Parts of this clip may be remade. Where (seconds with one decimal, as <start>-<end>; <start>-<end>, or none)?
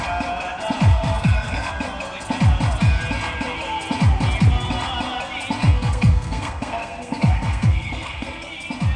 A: 0.9-1.7; 5.6-8.5